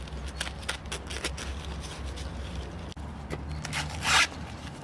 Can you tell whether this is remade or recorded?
recorded